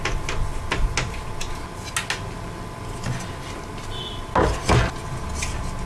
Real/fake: real